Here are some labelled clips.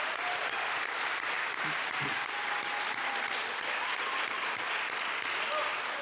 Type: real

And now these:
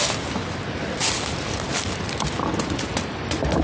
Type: real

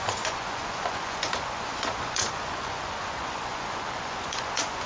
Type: fake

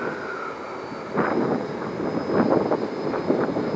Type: real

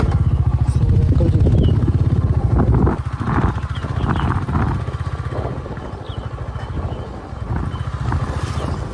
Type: real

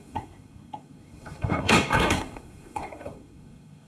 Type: fake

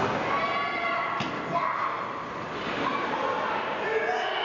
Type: real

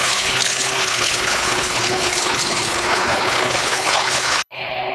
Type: fake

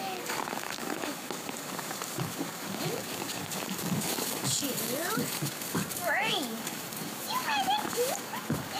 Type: fake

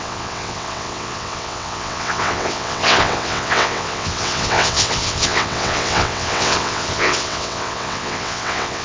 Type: fake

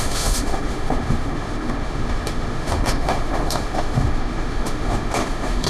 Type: fake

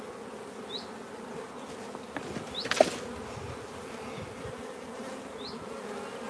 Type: real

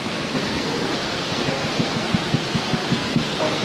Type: fake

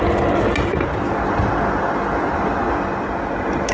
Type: real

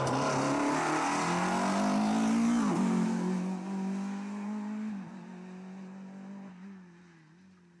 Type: real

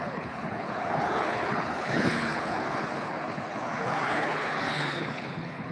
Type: fake